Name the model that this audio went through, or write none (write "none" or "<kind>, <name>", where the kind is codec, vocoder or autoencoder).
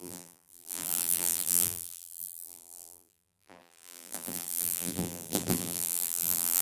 vocoder, BigVGAN v2